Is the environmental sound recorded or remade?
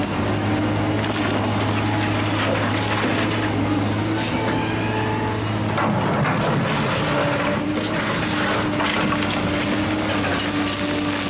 recorded